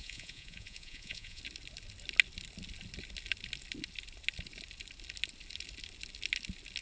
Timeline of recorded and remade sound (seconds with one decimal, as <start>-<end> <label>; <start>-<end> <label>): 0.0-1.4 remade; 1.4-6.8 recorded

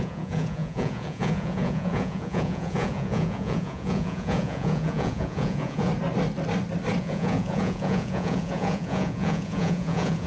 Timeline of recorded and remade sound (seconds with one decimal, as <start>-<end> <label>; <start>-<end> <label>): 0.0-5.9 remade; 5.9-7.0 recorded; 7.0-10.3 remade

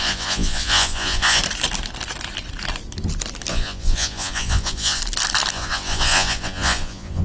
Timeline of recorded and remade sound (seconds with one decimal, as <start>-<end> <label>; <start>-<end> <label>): 0.0-1.4 remade; 1.4-3.5 recorded; 3.5-5.0 remade; 5.0-5.5 recorded; 5.5-7.2 remade

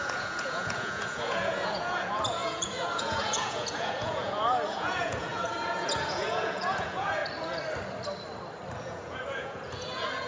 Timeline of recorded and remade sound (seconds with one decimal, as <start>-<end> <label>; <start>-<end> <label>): 0.0-7.2 remade; 7.2-8.8 recorded; 8.8-10.3 remade

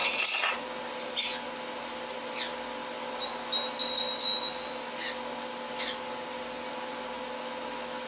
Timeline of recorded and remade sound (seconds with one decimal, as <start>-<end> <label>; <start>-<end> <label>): 0.0-0.5 remade; 0.5-8.1 recorded